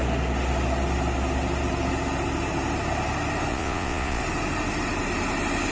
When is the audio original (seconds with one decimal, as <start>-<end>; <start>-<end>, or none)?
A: 0.0-3.5; 4.2-5.7

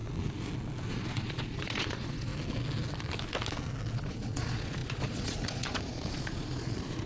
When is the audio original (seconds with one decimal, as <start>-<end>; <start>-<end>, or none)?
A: 0.0-0.9; 2.3-3.9

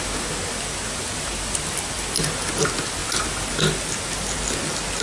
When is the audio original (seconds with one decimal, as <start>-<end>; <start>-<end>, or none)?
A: 0.0-5.0

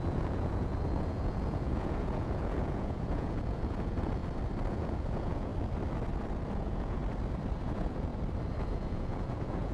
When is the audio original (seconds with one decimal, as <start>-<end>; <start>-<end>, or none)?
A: 4.2-4.7; 5.5-6.6; 7.0-7.6; 8.1-8.6

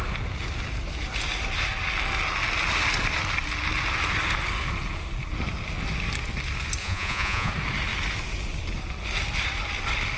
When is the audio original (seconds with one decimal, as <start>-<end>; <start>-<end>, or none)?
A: 0.0-6.8; 7.5-10.2